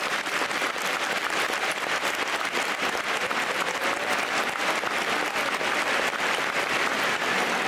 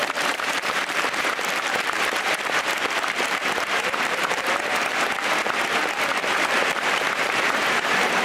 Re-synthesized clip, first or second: second